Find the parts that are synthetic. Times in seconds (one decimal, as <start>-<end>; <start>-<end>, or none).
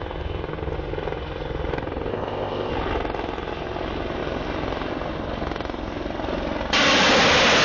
2.1-2.7